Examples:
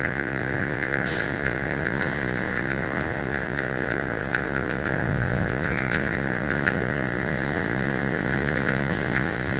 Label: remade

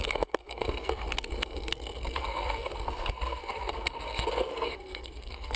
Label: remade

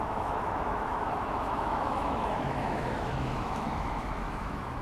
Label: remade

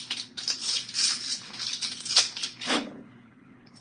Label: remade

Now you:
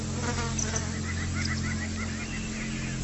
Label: recorded